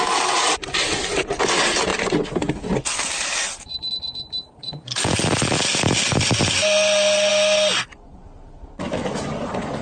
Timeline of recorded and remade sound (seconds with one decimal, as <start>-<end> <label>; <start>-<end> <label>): 0.0-9.8 recorded